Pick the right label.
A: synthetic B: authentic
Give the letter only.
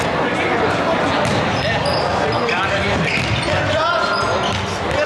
B